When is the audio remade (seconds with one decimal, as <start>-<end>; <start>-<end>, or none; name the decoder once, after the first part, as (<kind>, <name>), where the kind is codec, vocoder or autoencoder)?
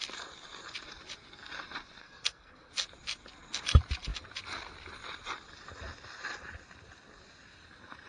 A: 2.0-2.7 (codec, SNAC)